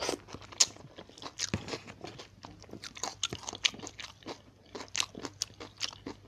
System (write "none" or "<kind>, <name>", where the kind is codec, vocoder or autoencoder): none